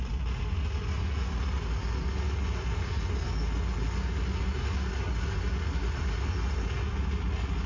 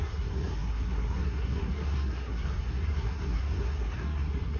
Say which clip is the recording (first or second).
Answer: first